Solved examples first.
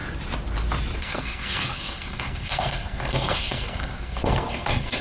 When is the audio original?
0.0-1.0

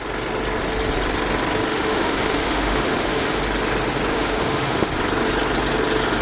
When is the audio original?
0.0-1.7; 3.4-4.1; 4.9-6.2

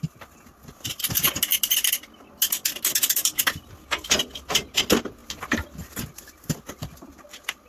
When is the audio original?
0.0-7.7

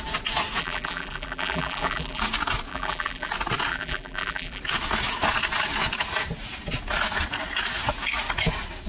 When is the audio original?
0.0-0.6; 2.2-2.7; 3.3-3.7; 4.6-8.9